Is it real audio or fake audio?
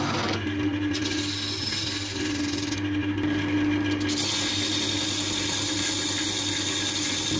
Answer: real